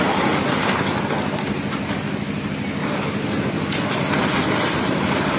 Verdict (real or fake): real